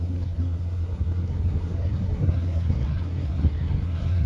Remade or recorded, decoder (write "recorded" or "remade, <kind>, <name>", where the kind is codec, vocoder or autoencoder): remade, codec, SNAC